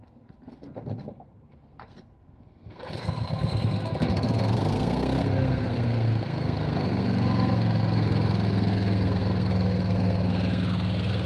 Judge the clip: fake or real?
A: fake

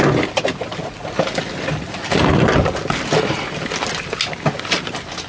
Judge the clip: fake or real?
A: real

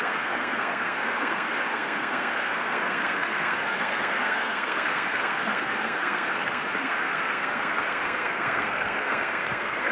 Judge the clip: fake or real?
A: fake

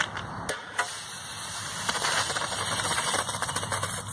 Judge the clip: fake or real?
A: real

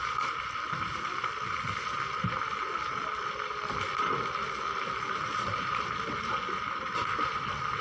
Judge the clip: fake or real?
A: real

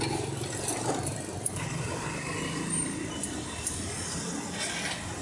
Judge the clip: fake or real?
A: real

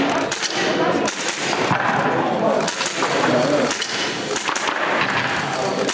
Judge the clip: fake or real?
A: real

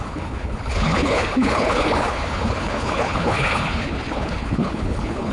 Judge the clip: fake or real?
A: fake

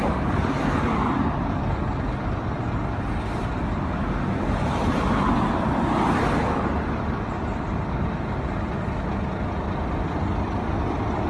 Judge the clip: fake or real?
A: real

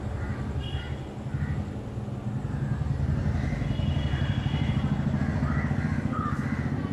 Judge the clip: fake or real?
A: real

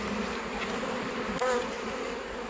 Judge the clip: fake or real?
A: real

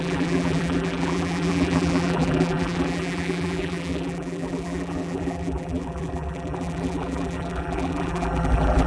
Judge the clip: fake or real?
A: fake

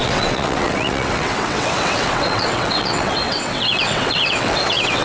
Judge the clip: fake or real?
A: fake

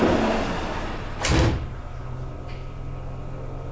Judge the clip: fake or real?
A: real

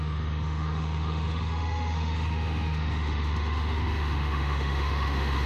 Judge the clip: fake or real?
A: fake